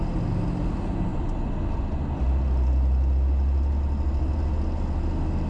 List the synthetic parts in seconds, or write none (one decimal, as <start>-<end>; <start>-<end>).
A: none